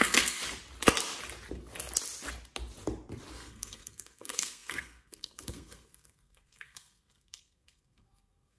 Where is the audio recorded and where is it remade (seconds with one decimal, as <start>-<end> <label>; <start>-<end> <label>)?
0.0-0.4 remade; 0.4-3.3 recorded; 3.3-8.6 remade

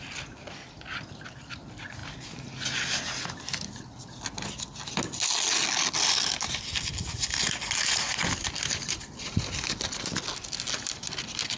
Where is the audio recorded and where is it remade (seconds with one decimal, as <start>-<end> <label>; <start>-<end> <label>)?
0.0-11.6 recorded

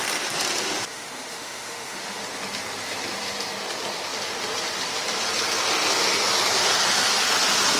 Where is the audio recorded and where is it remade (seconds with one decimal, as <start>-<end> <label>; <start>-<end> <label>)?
0.0-0.9 recorded; 0.9-2.2 remade; 2.2-7.8 recorded

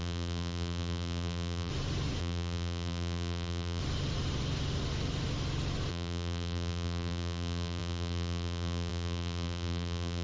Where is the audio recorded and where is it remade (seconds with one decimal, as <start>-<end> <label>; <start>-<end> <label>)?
0.0-1.7 remade; 1.7-2.2 recorded; 2.2-3.8 remade; 3.8-5.9 recorded; 5.9-10.2 remade

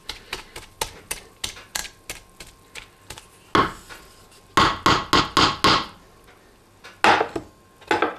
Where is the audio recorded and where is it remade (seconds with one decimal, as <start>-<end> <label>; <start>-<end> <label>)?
0.0-8.2 recorded

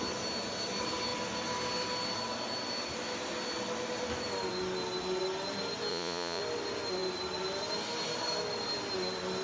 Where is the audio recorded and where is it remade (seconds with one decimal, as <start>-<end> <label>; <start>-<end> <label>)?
0.0-5.9 recorded; 5.9-6.4 remade; 6.4-9.4 recorded